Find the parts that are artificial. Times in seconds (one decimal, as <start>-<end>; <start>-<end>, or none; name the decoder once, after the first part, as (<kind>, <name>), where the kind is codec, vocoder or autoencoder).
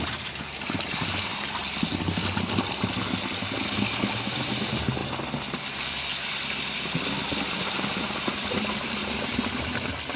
0.0-1.3 (vocoder, BigVGAN v2); 4.3-5.0; 8.0-9.0